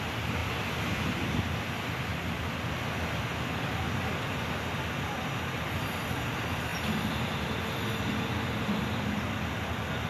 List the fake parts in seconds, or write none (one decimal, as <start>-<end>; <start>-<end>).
0.4-1.2